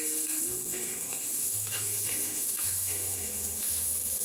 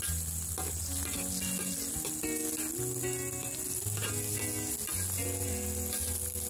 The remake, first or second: first